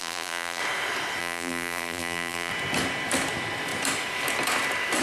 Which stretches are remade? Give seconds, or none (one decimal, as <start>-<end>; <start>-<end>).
0.0-0.6; 1.2-2.5

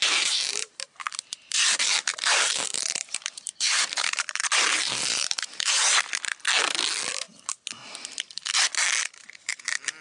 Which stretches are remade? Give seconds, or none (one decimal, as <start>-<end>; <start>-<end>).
0.0-5.8; 9.0-10.0

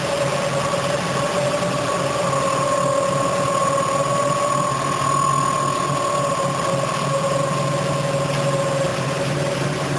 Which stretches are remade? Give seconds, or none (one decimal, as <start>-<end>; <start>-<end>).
8.9-10.0

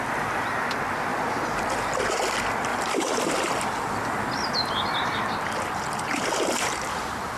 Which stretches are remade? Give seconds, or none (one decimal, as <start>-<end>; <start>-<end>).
1.1-1.7; 2.7-7.4

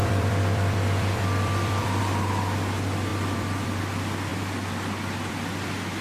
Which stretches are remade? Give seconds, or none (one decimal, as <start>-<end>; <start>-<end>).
0.0-2.0; 3.1-3.8

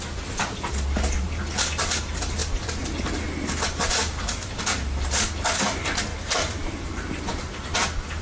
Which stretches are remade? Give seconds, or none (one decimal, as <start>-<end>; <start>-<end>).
2.4-4.6; 6.1-6.9